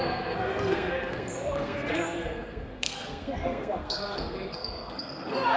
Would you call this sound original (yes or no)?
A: no